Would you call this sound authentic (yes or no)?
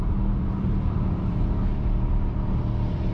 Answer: no